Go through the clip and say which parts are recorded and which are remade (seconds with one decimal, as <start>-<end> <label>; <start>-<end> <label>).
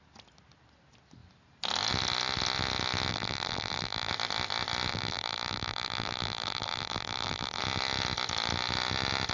0.0-3.1 recorded; 3.1-4.1 remade; 4.1-4.9 recorded; 4.9-7.6 remade; 7.6-9.3 recorded